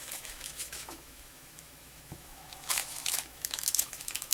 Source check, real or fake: fake